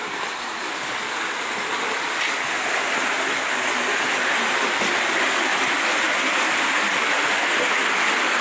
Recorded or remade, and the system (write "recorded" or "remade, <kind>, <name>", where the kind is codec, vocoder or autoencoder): recorded